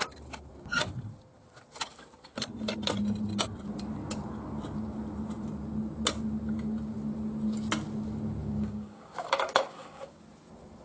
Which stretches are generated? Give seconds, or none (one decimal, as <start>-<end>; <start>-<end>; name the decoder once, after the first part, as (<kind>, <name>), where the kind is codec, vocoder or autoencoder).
8.4-10.2 (codec, DAC)

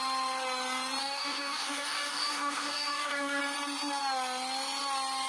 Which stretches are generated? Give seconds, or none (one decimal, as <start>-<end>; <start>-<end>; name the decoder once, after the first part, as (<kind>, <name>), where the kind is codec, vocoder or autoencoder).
1.0-3.4 (codec, DAC)

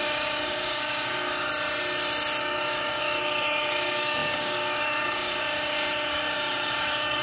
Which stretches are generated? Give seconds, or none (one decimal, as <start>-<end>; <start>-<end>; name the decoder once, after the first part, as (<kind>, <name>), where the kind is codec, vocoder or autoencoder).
0.0-1.5 (codec, DAC); 2.4-7.2